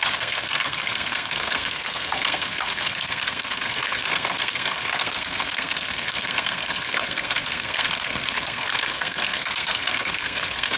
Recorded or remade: remade